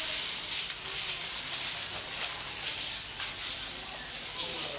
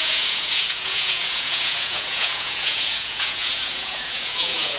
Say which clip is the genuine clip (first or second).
first